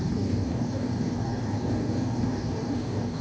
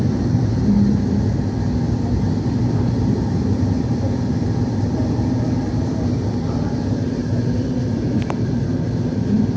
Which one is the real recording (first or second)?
second